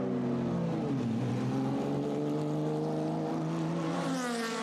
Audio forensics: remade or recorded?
recorded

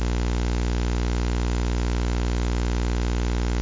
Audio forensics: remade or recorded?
recorded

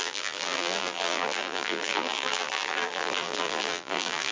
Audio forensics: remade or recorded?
remade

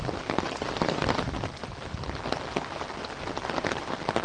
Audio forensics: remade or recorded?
recorded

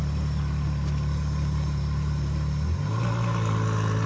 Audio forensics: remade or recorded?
recorded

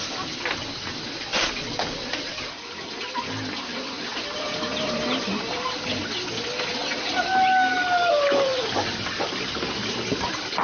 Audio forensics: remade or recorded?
recorded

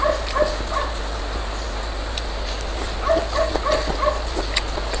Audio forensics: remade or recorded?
recorded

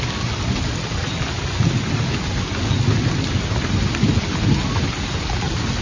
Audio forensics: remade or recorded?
recorded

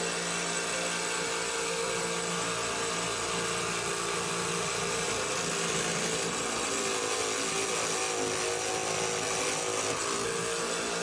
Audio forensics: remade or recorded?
recorded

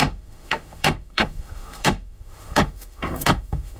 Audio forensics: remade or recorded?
remade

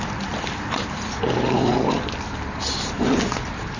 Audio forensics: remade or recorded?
recorded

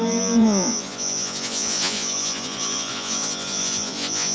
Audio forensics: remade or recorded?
remade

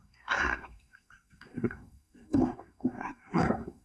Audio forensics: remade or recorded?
remade